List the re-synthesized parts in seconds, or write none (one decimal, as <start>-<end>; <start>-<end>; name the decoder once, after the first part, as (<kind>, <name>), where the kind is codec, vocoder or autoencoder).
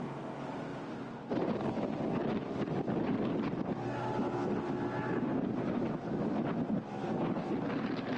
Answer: none